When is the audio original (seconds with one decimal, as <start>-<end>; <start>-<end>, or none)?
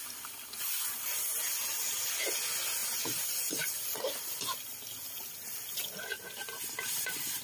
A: 0.0-2.8; 3.7-7.4